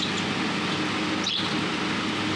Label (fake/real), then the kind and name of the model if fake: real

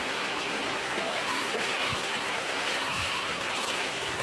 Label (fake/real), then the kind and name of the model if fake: fake, codec, SNAC